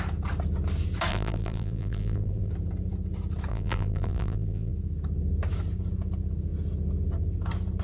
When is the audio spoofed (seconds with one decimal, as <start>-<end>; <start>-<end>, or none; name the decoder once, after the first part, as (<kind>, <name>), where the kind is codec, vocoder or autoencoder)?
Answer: 1.1-2.5 (vocoder, BigVGAN v2); 3.5-4.7